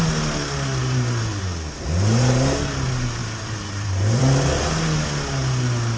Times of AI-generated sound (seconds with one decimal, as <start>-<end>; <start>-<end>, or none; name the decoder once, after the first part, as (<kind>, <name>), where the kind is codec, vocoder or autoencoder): 0.8-1.4 (vocoder, BigVGAN v2); 3.2-4.2